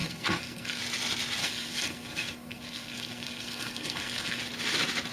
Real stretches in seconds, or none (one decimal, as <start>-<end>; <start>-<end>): 0.8-1.4; 4.4-5.1